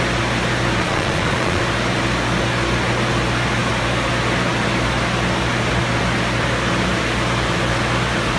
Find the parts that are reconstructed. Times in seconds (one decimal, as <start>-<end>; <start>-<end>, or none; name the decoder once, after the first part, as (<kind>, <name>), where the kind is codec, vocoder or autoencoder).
0.8-1.6 (vocoder, Vocos)